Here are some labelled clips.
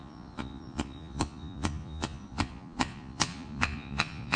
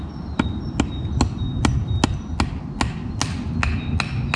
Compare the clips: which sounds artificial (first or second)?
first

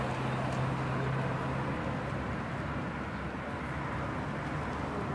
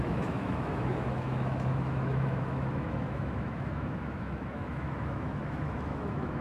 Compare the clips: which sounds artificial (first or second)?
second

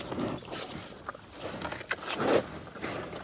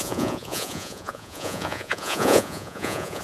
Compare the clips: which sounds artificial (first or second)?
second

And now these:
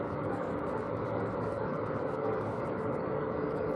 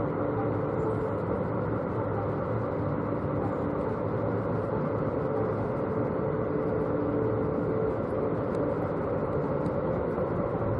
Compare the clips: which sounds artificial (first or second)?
first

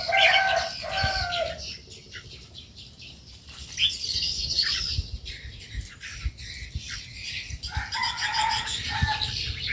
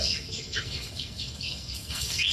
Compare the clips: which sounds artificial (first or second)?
second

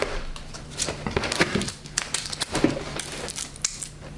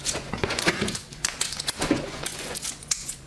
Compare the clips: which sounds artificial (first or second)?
second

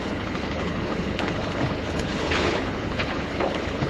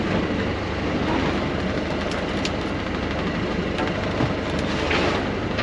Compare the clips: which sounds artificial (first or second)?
first